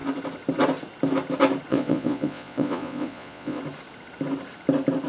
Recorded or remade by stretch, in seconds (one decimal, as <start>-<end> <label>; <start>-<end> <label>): 0.0-1.7 recorded; 1.7-3.6 remade; 3.6-5.1 recorded